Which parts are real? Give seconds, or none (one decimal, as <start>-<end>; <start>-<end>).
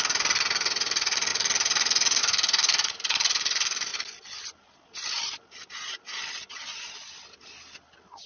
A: 0.0-8.3